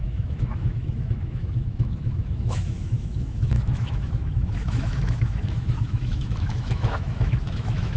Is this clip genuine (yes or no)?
no